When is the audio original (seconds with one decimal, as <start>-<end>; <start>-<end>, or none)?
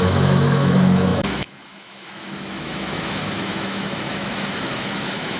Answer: none